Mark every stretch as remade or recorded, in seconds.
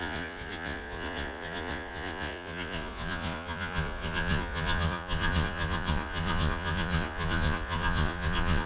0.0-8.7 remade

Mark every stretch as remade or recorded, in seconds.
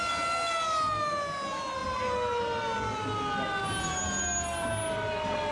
0.0-5.5 recorded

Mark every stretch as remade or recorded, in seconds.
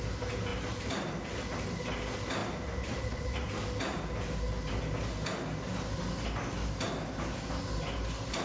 0.0-2.4 recorded; 2.4-3.3 remade; 3.3-8.4 recorded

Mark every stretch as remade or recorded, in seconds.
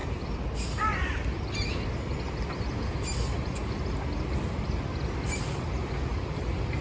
0.0-6.8 recorded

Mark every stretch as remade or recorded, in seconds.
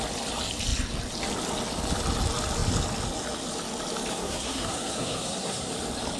0.0-4.1 recorded; 4.1-5.7 remade; 5.7-6.2 recorded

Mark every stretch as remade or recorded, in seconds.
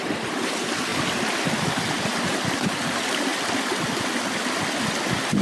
0.0-5.4 recorded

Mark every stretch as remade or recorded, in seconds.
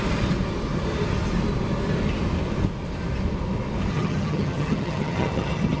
0.0-3.9 recorded; 3.9-5.8 remade